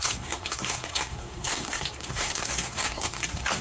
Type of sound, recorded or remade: remade